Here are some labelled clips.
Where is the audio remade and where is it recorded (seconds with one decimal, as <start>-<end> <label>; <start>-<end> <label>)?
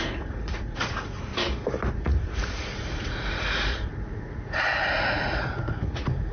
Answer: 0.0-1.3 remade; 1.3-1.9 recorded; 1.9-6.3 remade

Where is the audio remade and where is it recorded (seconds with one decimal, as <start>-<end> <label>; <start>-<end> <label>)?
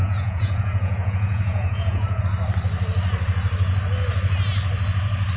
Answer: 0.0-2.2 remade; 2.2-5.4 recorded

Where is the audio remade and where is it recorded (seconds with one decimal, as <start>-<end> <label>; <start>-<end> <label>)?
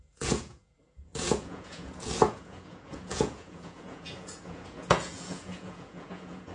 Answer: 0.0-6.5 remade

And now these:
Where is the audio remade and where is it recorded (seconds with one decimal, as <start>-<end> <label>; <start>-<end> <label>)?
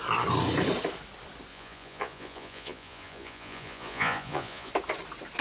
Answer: 0.0-1.5 recorded; 1.5-4.7 remade; 4.7-5.4 recorded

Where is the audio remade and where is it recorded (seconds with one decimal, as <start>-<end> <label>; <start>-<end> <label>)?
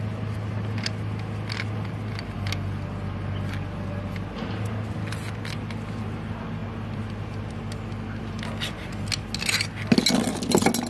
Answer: 0.0-10.9 recorded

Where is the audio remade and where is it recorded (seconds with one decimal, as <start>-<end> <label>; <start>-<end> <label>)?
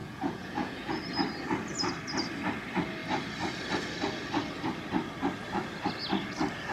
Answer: 0.0-1.0 remade; 1.0-6.7 recorded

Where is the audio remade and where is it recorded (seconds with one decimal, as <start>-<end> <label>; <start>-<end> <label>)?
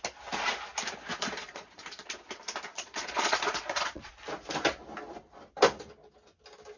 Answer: 0.0-1.1 recorded; 1.1-2.1 remade; 2.1-2.7 recorded; 2.7-4.1 remade; 4.1-6.8 recorded